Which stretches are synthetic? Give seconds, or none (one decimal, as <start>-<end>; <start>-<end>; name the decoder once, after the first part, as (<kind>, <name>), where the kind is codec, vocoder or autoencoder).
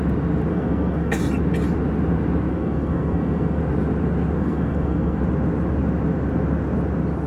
0.5-1.2 (codec, SNAC); 2.5-3.6; 4.4-5.2